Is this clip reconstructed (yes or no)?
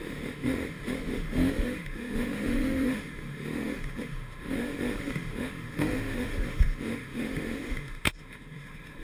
yes